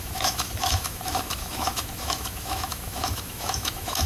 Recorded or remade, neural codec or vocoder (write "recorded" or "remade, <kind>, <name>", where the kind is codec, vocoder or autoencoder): remade, autoencoder, DAC-VAE